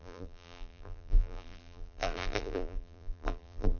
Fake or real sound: fake